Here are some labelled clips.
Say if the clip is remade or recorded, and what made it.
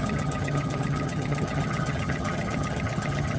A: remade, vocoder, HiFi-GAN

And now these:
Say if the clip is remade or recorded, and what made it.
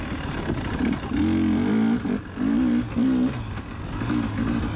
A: recorded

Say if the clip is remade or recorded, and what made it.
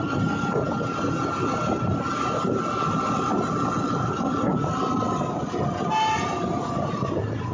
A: recorded